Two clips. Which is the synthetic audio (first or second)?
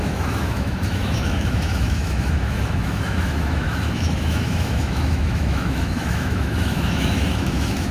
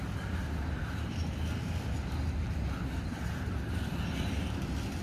first